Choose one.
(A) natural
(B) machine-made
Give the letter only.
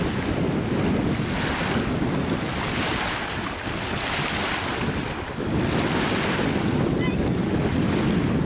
A